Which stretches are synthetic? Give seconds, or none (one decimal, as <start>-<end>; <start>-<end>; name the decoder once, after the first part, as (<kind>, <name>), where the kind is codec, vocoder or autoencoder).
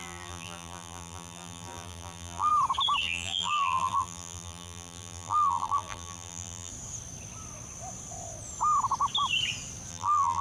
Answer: 0.0-2.5 (vocoder, BigVGAN v2); 3.0-6.7; 9.9-10.4